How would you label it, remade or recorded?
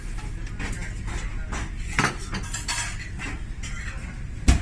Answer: recorded